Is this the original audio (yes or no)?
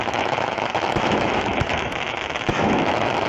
no